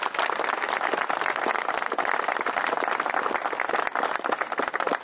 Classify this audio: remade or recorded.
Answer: recorded